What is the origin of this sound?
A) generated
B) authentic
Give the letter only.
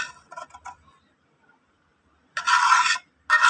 B